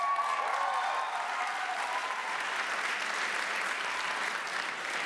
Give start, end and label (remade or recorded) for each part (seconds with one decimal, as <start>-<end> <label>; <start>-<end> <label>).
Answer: 0.0-5.1 recorded